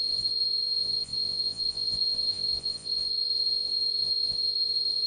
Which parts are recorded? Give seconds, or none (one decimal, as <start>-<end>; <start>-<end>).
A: none